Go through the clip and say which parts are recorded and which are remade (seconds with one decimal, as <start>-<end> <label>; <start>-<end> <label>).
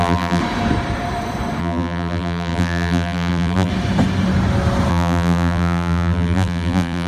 0.0-0.4 remade; 0.4-1.6 recorded; 1.6-3.7 remade; 3.7-4.9 recorded; 4.9-7.1 remade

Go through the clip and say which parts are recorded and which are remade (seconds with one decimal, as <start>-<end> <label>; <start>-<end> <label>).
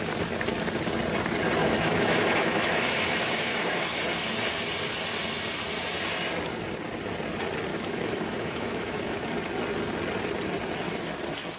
0.0-1.6 recorded; 1.6-4.0 remade; 4.0-7.7 recorded; 7.7-9.3 remade; 9.3-11.6 recorded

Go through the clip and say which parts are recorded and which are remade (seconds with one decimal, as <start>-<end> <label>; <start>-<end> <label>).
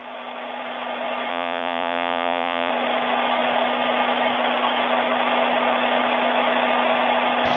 0.0-1.3 recorded; 1.3-2.7 remade; 2.7-7.6 recorded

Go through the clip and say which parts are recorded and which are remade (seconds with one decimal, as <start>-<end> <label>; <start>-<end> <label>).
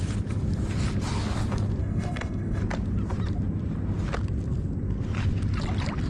0.0-1.8 recorded; 1.8-2.6 remade; 2.6-6.1 recorded